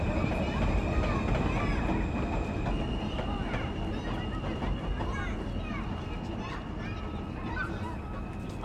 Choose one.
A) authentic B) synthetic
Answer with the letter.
A